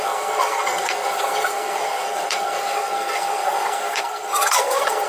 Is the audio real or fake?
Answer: fake